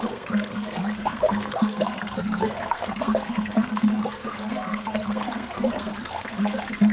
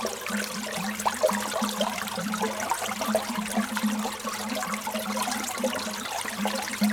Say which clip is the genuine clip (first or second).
second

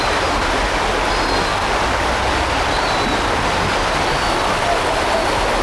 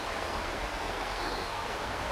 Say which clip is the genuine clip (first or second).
first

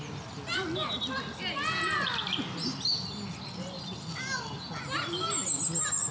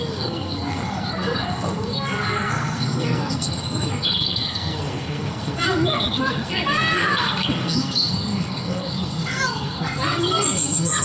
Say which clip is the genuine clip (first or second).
first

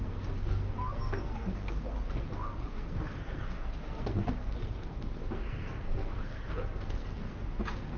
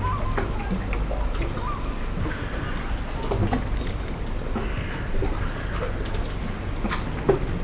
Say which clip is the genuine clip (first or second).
second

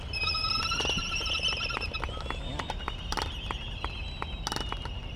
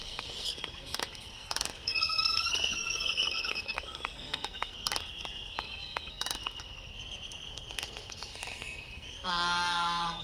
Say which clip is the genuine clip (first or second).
first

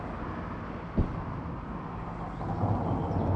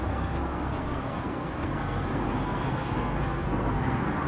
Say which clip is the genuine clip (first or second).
first